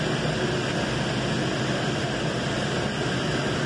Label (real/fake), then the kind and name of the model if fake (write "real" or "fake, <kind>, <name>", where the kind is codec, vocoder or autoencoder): real